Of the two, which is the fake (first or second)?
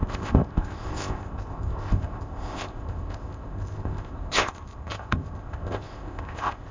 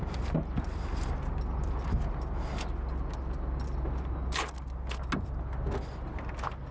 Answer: first